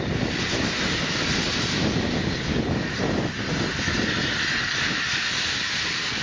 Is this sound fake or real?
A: real